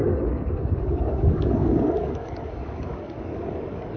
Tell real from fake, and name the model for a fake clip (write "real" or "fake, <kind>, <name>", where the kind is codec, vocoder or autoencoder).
fake, codec, DAC